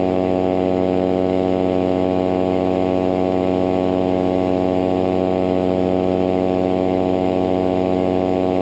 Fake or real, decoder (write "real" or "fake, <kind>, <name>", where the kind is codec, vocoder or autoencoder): fake, autoencoder, DAC-VAE